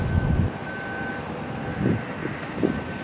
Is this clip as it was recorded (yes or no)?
yes